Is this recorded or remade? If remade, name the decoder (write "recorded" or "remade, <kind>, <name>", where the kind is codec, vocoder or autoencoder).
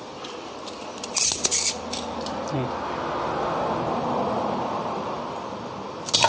recorded